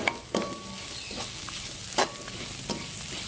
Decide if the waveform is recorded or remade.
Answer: recorded